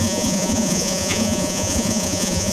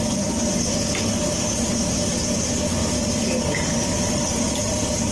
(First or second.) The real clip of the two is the second